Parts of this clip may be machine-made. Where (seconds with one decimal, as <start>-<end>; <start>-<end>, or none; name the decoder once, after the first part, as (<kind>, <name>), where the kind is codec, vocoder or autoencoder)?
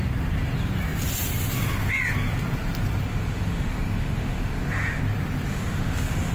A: 3.1-5.0 (autoencoder, DAC-VAE); 5.5-6.3